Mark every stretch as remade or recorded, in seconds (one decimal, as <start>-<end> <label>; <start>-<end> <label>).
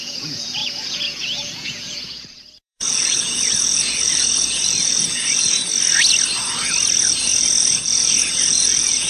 0.0-5.7 remade; 5.7-7.0 recorded; 7.0-9.1 remade